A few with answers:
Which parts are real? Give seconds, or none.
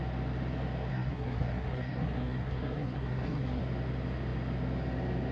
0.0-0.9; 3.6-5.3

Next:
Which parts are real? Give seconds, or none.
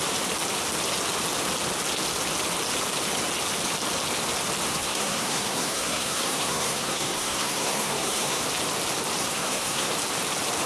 0.0-4.7; 8.4-9.2; 9.9-10.7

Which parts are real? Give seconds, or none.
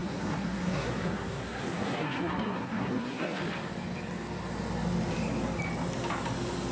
3.4-6.7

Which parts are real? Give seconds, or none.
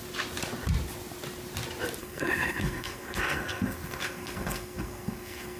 0.0-2.0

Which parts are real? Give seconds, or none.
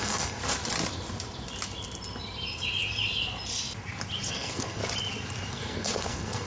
0.4-4.3; 4.8-5.5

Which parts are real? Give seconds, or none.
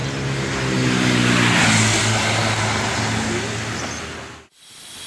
0.0-5.1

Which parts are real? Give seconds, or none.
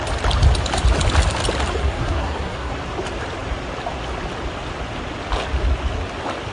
0.0-1.8; 2.7-6.5